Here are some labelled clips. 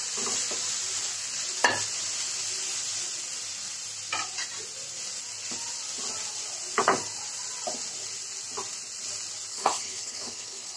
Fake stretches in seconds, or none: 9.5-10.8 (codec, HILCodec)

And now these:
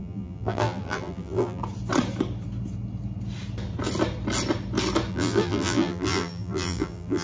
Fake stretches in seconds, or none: 0.0-1.6 (vocoder, BigVGAN v2); 5.1-7.2

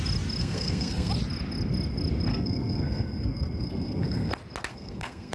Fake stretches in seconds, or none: 0.4-1.1 (codec, SNAC); 2.3-4.3; 4.7-5.3

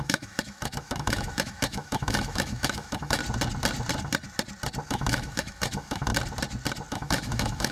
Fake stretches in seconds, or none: 0.0-3.2 (autoencoder, DAC-VAE); 4.9-6.1; 6.9-7.7

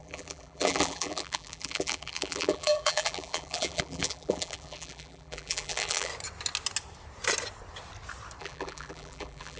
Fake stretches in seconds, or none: 0.0-6.1 (vocoder, BigVGAN v2); 8.4-9.6

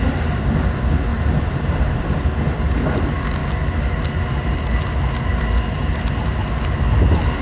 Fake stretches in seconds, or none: 1.1-2.3 (vocoder, BigVGAN v2)